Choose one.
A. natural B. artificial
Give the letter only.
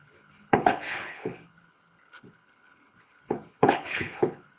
B